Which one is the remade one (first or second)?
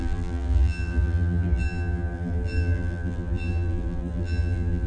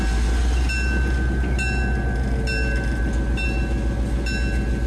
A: first